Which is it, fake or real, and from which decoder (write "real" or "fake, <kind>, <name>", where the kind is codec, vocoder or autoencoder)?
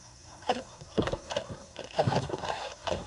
fake, codec, SNAC